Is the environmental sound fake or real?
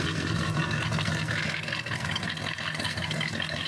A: fake